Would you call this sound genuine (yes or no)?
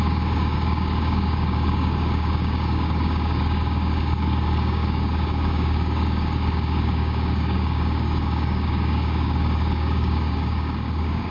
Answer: no